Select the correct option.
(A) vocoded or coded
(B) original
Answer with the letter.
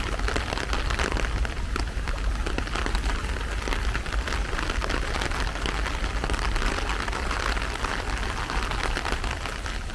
B